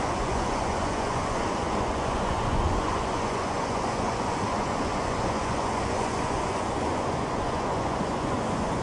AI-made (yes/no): yes